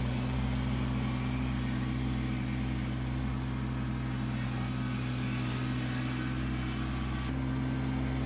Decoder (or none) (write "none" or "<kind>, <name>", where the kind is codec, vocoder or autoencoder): none